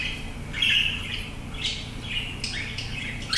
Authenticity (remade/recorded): recorded